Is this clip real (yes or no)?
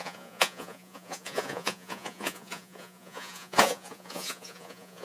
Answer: no